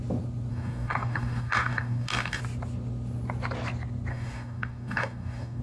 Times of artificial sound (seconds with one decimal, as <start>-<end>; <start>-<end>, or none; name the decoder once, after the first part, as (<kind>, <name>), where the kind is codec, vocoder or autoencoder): 0.5-2.4 (codec, DAC); 4.1-5.6